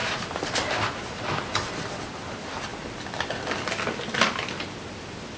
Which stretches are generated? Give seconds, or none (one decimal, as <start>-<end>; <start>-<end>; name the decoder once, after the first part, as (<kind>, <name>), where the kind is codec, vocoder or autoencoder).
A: 0.0-2.7 (vocoder, BigVGAN v2); 3.3-5.4